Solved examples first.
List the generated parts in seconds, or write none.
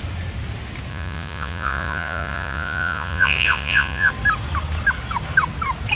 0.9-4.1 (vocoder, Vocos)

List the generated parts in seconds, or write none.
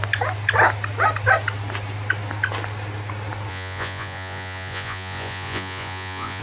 3.5-6.4 (vocoder, Vocos)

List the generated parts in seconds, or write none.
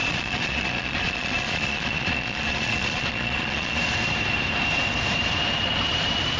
0.0-3.8 (vocoder, Vocos)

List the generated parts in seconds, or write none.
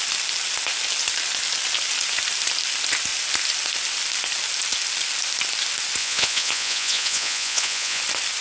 6.0-8.0 (vocoder, Vocos)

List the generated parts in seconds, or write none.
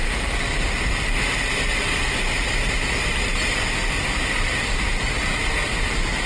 none